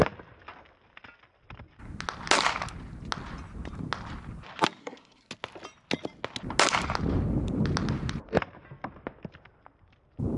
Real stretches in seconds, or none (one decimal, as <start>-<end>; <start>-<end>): 0.0-4.8; 5.3-10.4